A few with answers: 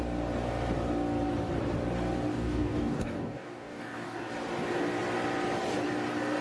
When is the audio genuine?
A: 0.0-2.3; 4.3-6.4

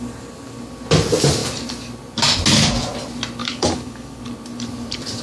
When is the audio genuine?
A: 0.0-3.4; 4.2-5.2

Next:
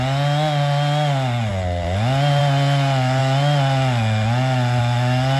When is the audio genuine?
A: 0.0-5.4

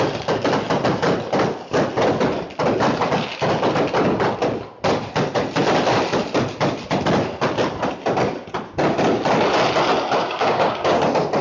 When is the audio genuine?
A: 0.0-10.2; 11.0-11.4

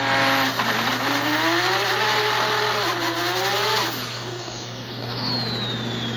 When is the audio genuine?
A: 0.0-4.1; 5.3-6.2